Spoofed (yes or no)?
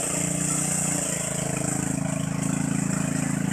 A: no